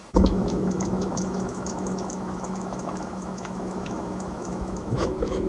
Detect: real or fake fake